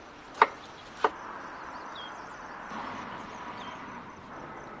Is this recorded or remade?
recorded